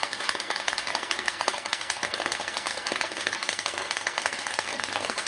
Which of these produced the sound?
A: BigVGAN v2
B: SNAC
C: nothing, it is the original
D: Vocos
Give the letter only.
B